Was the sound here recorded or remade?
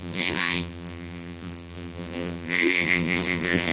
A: remade